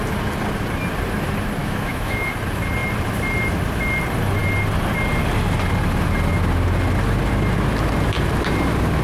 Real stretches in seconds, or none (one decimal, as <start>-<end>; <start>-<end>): 0.0-1.6; 2.3-9.0